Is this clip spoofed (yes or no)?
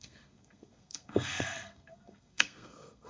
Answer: yes